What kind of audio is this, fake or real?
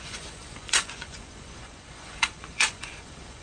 fake